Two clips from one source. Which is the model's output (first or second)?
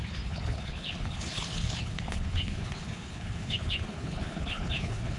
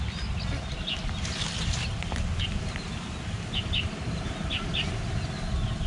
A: first